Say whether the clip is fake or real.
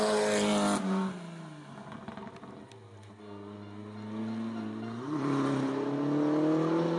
real